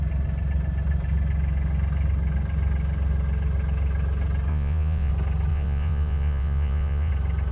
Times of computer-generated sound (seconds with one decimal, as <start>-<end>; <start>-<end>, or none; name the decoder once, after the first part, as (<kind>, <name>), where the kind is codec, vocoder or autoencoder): 4.5-5.1 (vocoder, Vocos); 5.5-7.1